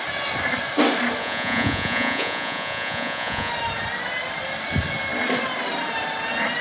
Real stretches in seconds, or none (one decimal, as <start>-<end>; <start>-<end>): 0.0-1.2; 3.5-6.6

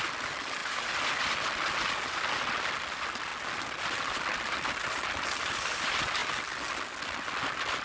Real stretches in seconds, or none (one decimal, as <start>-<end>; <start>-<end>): 0.0-7.8

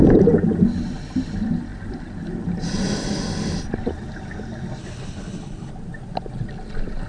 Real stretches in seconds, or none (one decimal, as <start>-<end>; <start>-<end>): 0.0-4.8; 5.7-7.1

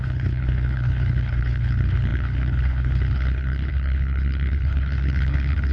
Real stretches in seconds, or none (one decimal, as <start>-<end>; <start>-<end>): none